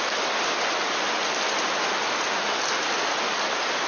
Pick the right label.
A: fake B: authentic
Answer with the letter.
B